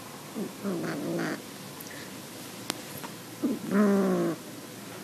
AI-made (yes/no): no